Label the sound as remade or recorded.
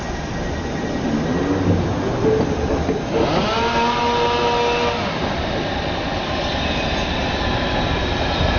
recorded